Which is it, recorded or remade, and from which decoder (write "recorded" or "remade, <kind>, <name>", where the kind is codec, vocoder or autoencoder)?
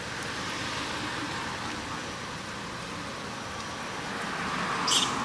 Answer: recorded